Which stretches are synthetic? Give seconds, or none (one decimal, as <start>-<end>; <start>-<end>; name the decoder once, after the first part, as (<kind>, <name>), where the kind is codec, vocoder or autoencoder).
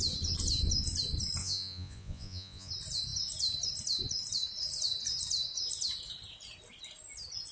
1.4-2.7 (vocoder, Vocos)